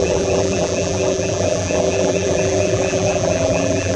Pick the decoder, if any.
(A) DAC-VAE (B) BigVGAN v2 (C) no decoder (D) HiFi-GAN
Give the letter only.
B